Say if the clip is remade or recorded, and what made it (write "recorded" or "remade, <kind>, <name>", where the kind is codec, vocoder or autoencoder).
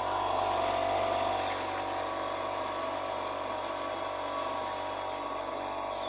recorded